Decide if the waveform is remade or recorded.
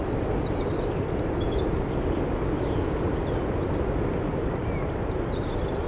recorded